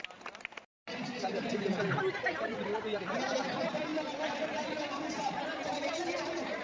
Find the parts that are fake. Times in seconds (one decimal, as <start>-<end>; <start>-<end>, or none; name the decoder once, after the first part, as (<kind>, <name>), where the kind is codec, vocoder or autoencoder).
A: none